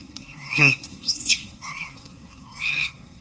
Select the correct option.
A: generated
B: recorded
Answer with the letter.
A